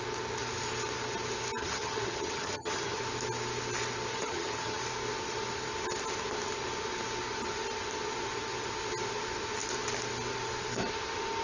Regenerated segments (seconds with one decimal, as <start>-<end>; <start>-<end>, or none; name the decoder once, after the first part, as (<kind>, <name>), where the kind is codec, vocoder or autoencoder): 1.6-3.0 (vocoder, HiFi-GAN); 4.1-4.8